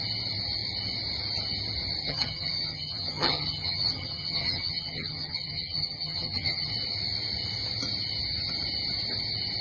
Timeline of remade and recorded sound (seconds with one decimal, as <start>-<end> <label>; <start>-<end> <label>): 0.0-2.0 recorded; 2.0-6.7 remade; 6.7-9.6 recorded